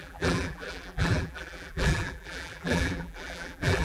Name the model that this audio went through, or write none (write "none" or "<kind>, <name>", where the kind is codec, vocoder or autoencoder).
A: vocoder, BigVGAN v2